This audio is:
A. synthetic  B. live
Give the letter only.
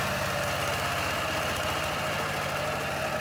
B